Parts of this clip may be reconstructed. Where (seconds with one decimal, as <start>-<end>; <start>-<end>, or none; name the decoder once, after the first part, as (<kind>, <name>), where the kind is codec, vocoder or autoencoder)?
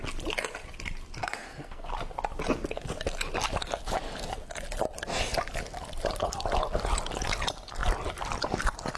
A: 1.2-1.9 (codec, SNAC)